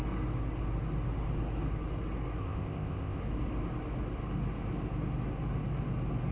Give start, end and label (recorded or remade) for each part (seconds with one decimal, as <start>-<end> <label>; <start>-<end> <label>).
0.0-2.4 recorded; 2.4-3.2 remade; 3.2-6.3 recorded